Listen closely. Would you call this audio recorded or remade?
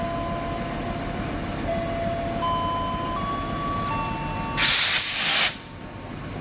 recorded